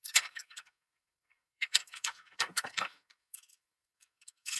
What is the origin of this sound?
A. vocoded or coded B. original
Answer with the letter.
A